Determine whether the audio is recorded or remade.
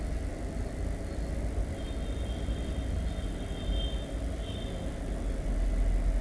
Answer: recorded